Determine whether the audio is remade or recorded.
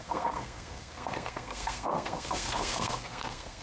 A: remade